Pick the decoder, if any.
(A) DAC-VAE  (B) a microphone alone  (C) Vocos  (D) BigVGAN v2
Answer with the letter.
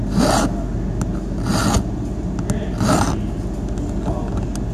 B